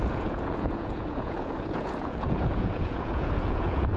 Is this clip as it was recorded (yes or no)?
no